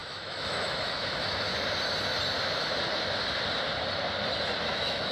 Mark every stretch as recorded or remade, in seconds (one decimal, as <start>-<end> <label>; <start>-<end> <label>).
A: 0.0-1.5 remade; 1.5-4.6 recorded; 4.6-5.1 remade